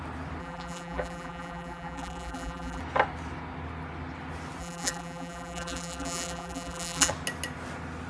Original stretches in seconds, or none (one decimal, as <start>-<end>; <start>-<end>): 0.0-0.4; 2.8-4.6; 7.1-8.1